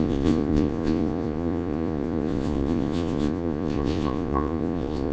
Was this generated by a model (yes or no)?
yes